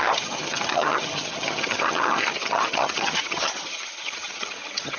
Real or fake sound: fake